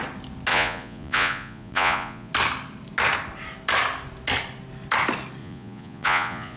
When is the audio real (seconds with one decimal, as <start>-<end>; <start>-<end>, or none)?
0.0-0.5; 2.3-5.4